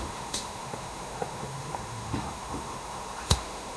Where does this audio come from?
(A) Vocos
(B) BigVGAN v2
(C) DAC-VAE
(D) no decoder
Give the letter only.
C